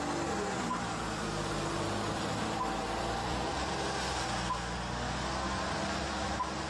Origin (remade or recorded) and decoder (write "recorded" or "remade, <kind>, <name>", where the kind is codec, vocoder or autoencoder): remade, vocoder, BigVGAN v2